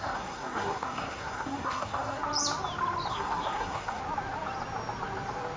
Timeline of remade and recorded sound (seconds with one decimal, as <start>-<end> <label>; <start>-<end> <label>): 0.0-2.2 remade; 2.2-3.1 recorded; 3.1-4.0 remade; 4.0-5.6 recorded